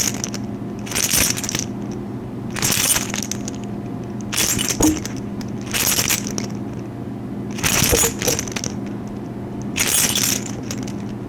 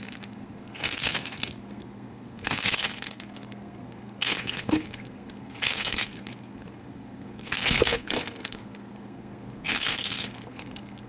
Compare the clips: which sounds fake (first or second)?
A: second